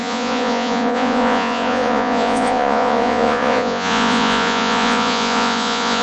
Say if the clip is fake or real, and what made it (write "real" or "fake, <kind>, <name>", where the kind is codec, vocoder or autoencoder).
fake, vocoder, Vocos